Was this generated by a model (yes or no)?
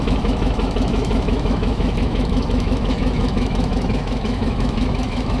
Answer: yes